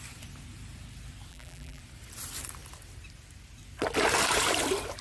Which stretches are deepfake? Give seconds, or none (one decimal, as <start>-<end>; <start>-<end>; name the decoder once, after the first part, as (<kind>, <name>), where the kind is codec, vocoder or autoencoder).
1.3-1.8 (vocoder, BigVGAN v2)